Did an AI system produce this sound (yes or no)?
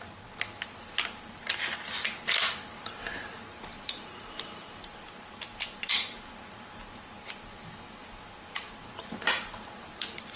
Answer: yes